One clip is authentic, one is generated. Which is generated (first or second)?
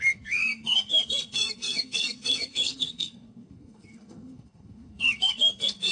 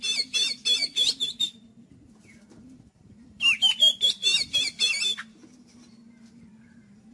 first